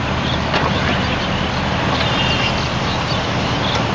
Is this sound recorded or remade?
recorded